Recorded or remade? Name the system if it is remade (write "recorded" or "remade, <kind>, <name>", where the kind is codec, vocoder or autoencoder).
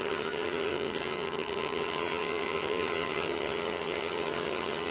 remade, vocoder, HiFi-GAN